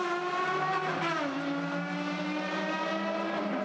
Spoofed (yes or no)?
no